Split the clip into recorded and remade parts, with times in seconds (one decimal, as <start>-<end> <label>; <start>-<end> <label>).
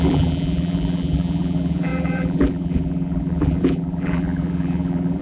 0.0-5.2 remade